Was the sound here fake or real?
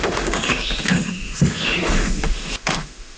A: fake